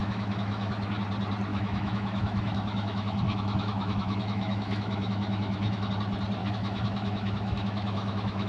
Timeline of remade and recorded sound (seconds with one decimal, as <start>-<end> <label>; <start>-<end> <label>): 0.0-0.9 remade; 0.9-1.5 recorded; 1.5-5.9 remade; 5.9-6.4 recorded; 6.4-8.5 remade